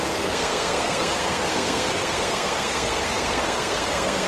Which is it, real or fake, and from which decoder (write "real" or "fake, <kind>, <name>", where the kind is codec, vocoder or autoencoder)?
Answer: fake, codec, SNAC